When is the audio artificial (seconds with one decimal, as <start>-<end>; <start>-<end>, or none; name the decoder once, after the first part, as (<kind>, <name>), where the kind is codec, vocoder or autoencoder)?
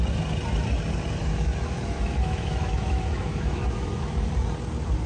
1.2-4.3 (autoencoder, DAC-VAE)